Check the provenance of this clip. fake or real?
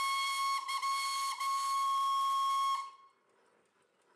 real